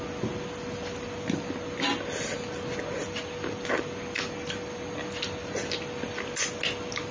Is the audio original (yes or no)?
yes